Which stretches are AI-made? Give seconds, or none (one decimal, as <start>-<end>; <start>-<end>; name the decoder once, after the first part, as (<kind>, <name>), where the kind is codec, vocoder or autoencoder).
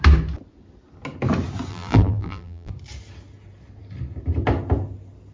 1.7-2.7 (vocoder, BigVGAN v2)